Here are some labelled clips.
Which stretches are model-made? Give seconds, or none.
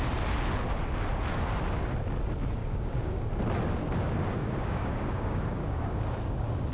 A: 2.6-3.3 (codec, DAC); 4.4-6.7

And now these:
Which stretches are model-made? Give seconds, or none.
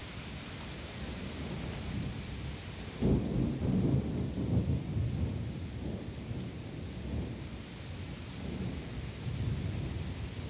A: none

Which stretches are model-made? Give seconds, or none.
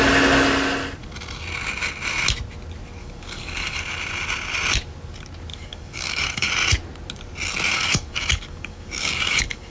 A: 3.0-3.8 (codec, DAC); 5.5-6.5; 7.7-9.7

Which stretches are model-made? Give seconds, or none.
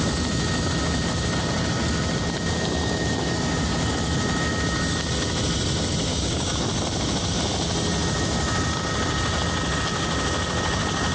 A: 6.1-6.6 (codec, DAC)